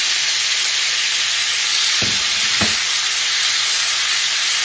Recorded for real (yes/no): yes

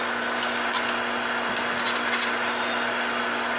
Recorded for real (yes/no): yes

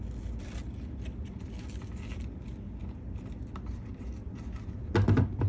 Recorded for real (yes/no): yes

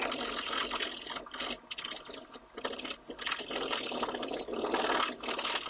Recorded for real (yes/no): yes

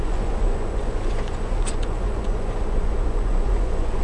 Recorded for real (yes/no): no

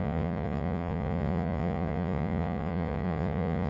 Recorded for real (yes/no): no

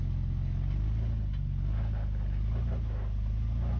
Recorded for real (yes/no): yes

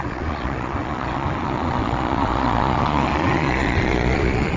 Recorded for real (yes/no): no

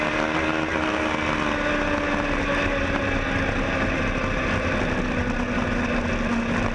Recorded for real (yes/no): yes